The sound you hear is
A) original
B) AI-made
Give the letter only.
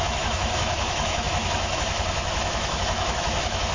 B